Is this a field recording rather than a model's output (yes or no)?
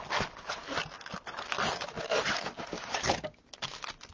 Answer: yes